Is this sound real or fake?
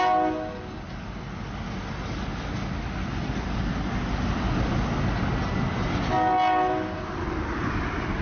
real